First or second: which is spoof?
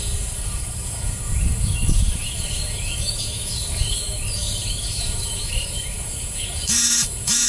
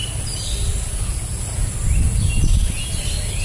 first